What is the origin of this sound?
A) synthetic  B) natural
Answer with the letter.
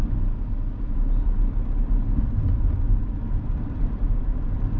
A